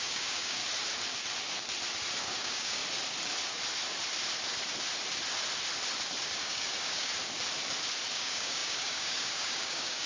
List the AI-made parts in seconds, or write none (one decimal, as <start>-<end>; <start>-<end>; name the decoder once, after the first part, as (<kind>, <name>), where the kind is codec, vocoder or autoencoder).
0.0-0.6 (codec, DAC); 2.2-2.8; 6.4-7.1; 8.1-10.1